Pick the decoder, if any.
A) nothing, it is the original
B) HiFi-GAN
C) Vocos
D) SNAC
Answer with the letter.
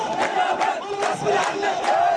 A